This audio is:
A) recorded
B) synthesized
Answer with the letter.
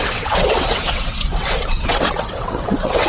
B